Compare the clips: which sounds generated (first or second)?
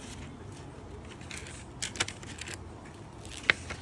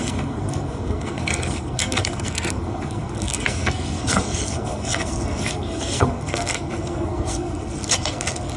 second